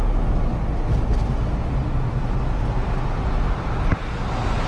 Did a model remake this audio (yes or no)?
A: no